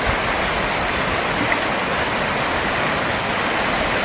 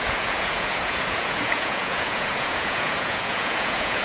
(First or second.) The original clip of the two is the first